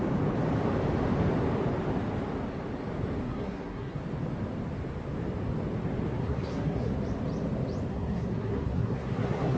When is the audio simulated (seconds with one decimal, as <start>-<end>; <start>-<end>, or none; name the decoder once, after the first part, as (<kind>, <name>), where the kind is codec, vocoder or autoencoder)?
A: 3.2-4.0 (codec, SNAC); 6.2-6.9; 7.9-9.6